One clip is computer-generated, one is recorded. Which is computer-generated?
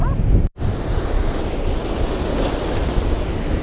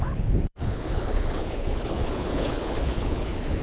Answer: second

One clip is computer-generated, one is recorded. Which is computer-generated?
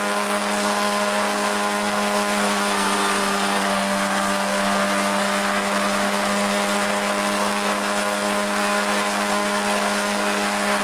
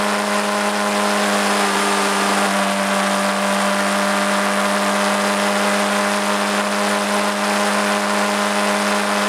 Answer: first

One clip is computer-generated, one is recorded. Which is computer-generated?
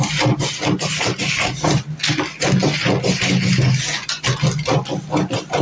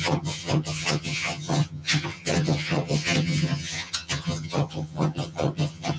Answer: second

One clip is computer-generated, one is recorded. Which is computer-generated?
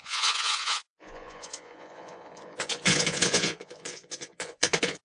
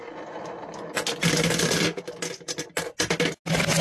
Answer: first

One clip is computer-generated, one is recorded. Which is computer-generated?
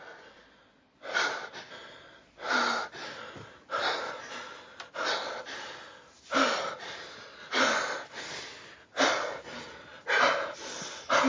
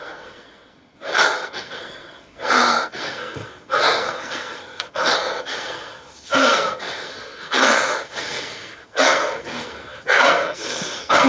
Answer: second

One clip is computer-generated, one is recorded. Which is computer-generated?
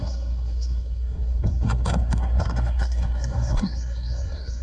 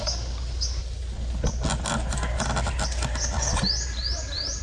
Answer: first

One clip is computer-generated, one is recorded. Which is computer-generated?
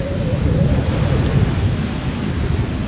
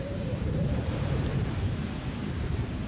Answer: second